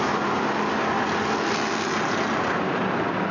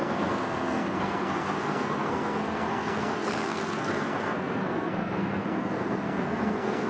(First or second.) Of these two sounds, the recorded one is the first